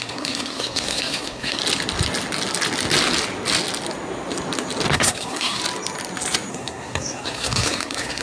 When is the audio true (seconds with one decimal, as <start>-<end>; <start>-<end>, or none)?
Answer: 1.6-4.9; 5.6-6.5